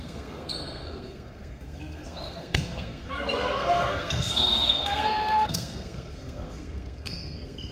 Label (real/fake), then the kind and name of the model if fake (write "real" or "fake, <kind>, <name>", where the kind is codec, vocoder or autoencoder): fake, codec, SNAC